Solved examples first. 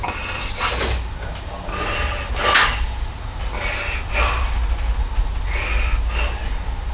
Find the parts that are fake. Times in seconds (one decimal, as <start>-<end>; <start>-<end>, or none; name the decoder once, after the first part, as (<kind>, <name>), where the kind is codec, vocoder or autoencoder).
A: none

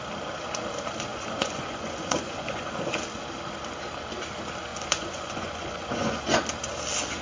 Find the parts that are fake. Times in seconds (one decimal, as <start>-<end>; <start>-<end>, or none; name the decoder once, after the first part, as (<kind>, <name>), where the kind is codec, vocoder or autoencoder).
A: 1.1-2.7 (vocoder, Vocos); 4.7-6.4

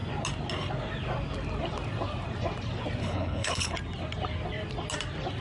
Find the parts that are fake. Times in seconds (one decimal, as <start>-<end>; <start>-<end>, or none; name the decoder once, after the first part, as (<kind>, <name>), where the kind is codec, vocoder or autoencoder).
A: 3.0-3.7 (codec, HILCodec)

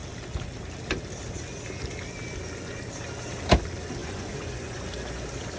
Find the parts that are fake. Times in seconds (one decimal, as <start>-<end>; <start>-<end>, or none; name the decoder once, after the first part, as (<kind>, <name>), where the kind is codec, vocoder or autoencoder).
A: 4.0-4.8 (vocoder, Vocos)

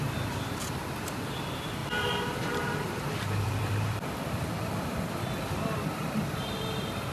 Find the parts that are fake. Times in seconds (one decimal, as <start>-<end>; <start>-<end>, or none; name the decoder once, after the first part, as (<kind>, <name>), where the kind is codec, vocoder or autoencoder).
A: 1.0-7.1 (vocoder, BigVGAN v2)